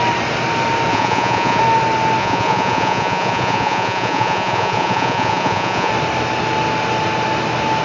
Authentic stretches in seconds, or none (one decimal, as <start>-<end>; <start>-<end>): 0.0-0.9; 1.6-2.2; 5.9-7.8